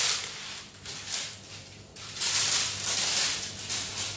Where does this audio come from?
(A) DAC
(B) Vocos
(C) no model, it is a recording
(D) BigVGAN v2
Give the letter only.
D